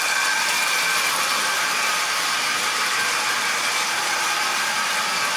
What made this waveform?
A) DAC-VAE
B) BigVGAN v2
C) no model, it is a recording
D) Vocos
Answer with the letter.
C